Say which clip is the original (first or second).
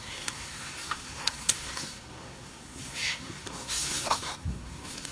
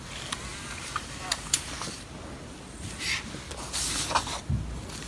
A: second